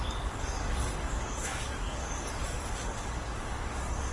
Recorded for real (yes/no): no